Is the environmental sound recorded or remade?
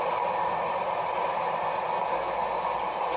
recorded